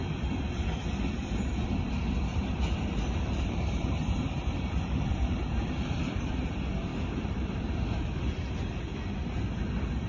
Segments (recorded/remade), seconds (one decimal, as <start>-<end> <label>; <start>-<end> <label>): 0.0-2.3 recorded; 2.3-6.3 remade; 6.3-6.9 recorded; 6.9-8.2 remade; 8.2-10.1 recorded